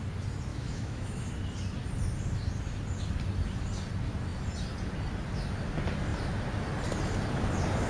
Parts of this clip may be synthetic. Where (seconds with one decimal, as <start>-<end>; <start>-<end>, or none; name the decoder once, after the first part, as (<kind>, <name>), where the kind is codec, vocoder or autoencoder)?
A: 0.5-1.3 (autoencoder, DAC-VAE)